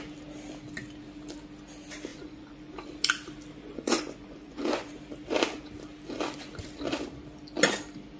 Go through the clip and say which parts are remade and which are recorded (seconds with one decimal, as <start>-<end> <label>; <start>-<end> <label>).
0.0-2.1 recorded; 2.1-2.7 remade; 2.7-3.6 recorded; 3.6-4.9 remade; 4.9-8.2 recorded